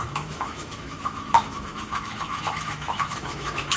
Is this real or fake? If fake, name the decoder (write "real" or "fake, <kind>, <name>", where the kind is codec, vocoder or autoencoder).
fake, autoencoder, DAC-VAE